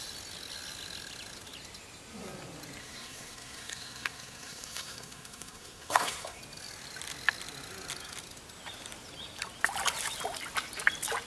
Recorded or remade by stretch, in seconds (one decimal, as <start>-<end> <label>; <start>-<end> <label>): 0.0-2.8 recorded; 2.8-6.4 remade; 6.4-11.3 recorded